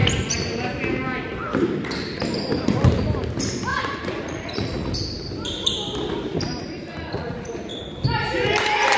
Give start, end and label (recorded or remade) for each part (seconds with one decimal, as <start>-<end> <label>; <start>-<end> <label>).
0.0-3.7 recorded; 3.7-4.9 remade; 4.9-6.9 recorded; 6.9-7.5 remade; 7.5-9.0 recorded